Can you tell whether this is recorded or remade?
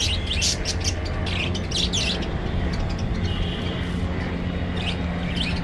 recorded